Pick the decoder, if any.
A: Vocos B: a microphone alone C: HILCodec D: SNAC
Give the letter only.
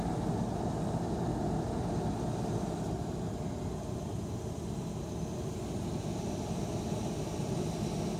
B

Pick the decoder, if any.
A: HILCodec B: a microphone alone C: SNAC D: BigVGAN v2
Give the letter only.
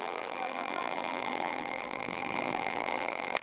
D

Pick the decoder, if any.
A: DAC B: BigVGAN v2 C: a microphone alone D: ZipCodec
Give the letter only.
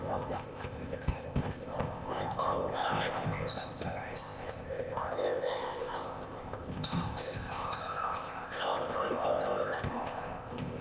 D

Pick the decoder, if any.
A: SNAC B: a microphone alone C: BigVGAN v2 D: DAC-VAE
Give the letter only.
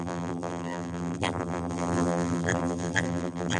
C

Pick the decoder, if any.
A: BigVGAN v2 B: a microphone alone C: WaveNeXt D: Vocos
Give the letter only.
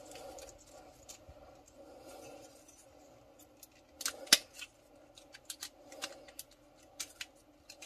B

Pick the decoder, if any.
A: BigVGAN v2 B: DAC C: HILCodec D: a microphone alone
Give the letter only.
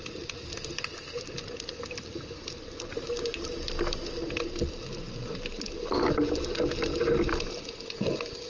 D